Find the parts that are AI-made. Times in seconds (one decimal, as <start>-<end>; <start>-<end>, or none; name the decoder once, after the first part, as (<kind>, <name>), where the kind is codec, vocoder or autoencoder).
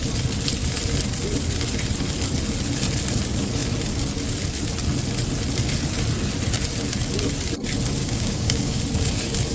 8.0-8.8 (codec, DAC)